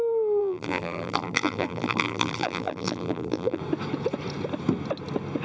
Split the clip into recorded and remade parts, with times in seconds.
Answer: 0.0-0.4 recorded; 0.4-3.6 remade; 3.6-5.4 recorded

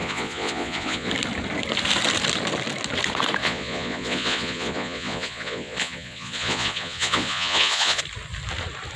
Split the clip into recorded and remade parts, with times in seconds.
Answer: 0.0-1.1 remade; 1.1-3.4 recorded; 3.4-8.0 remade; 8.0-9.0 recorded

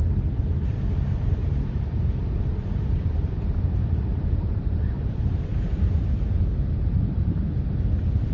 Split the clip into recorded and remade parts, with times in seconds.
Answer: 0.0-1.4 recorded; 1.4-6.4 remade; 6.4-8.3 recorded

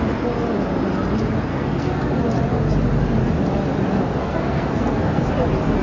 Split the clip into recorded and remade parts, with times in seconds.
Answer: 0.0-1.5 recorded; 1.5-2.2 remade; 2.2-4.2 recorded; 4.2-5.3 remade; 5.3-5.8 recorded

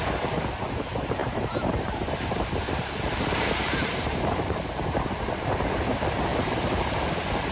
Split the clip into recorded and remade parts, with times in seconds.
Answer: 0.0-1.2 recorded; 1.2-5.7 remade; 5.7-6.3 recorded; 6.3-6.8 remade; 6.8-7.5 recorded

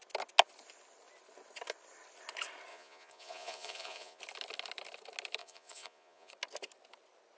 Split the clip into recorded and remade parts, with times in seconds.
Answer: 0.0-2.7 recorded; 2.7-4.2 remade; 4.2-5.4 recorded; 5.4-6.3 remade; 6.3-7.4 recorded

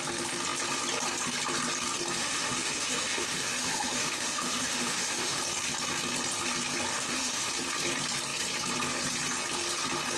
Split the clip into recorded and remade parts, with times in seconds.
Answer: 0.0-2.2 recorded; 2.2-5.4 remade; 5.4-6.9 recorded; 6.9-7.5 remade; 7.5-10.2 recorded

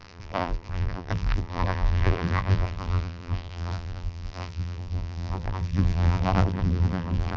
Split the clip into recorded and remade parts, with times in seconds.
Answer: 0.0-7.4 remade